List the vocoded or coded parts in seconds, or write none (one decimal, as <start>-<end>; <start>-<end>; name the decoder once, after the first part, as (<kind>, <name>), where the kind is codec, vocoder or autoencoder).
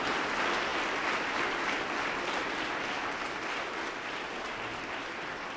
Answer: none